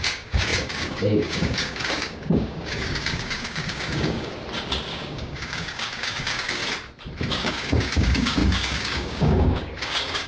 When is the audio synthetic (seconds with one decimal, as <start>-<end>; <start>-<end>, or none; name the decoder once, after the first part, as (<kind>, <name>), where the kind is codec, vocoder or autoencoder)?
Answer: 0.0-4.3 (codec, DAC); 4.9-6.6; 7.3-10.3